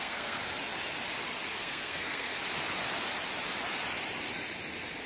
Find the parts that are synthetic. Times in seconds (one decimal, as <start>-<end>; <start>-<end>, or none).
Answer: 0.0-0.4; 1.5-2.3